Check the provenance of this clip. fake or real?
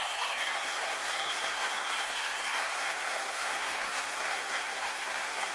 fake